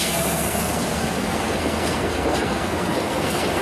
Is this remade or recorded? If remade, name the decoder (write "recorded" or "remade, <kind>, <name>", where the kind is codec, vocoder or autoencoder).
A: remade, codec, SNAC